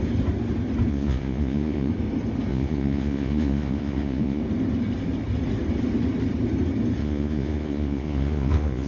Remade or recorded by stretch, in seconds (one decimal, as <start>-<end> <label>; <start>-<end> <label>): 0.0-0.9 recorded; 0.9-1.9 remade; 1.9-2.5 recorded; 2.5-4.4 remade; 4.4-7.0 recorded; 7.0-8.9 remade